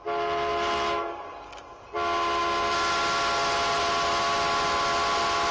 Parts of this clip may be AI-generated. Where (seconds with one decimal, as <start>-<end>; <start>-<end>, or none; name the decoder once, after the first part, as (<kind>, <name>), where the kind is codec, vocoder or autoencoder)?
none